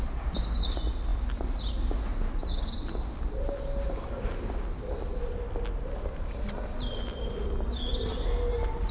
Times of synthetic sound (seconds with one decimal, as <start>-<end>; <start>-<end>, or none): none